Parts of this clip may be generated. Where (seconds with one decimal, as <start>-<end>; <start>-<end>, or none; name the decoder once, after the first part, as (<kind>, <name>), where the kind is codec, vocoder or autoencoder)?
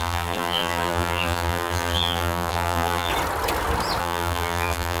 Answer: 0.0-3.1 (vocoder, BigVGAN v2); 4.0-5.0